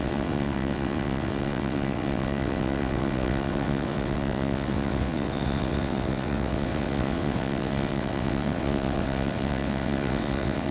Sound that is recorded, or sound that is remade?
remade